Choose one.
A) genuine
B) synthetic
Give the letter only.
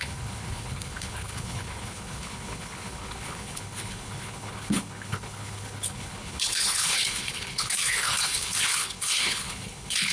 B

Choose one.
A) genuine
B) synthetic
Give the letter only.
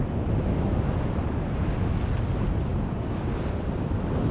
A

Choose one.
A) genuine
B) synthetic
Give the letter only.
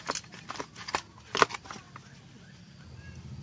A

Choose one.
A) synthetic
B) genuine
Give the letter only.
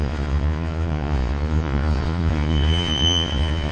A